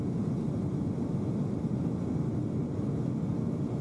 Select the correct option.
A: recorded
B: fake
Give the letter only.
A